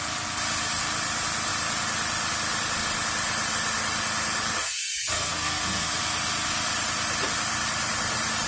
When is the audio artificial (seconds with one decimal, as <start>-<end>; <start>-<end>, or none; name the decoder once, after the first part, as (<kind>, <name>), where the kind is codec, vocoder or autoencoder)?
4.6-5.9 (codec, SNAC)